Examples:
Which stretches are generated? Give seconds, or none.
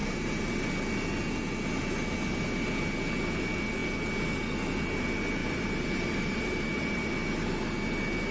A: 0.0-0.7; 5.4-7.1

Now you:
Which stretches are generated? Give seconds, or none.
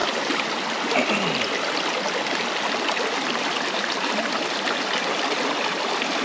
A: none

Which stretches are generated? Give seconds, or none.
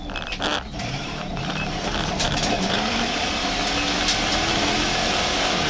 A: 0.7-3.3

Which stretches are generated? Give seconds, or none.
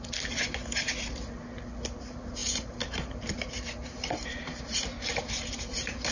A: 0.0-1.4; 2.0-6.1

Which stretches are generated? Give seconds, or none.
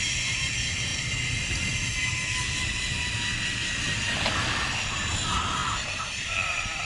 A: 5.6-6.8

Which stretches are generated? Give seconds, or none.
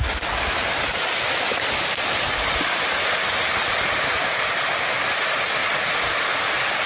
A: 5.6-6.2